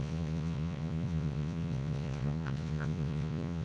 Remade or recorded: remade